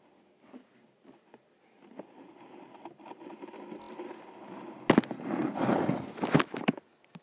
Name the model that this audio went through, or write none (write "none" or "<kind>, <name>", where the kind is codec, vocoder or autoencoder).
none